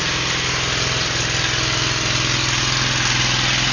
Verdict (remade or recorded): recorded